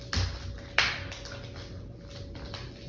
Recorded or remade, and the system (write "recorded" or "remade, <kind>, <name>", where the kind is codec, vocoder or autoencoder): recorded